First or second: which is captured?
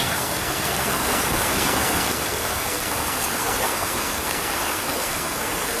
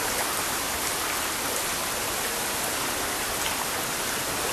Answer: second